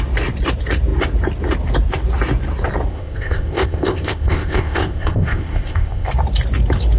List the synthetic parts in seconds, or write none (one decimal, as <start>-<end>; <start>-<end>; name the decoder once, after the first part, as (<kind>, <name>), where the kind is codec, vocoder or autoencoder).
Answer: 2.9-6.1 (codec, ZipCodec)